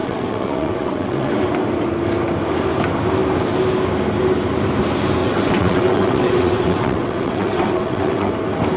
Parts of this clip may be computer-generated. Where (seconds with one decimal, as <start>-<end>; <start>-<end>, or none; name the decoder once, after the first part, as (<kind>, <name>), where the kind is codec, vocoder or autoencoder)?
0.0-1.3 (vocoder, WaveNeXt); 5.2-8.3